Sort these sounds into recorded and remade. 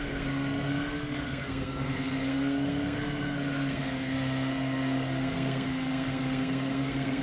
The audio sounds remade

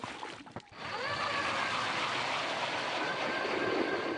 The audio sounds recorded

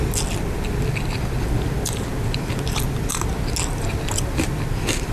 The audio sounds recorded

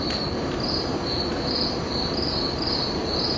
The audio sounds remade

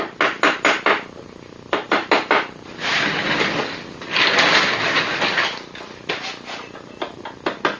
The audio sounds recorded